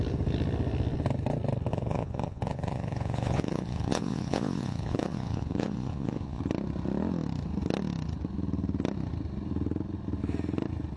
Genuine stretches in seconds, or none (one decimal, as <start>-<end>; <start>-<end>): 0.0-1.7; 6.4-11.0